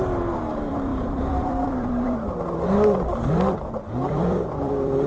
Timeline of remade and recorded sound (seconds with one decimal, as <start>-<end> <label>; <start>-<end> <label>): 0.0-5.1 remade